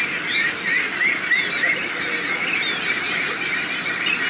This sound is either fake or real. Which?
real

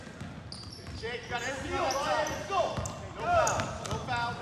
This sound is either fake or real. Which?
real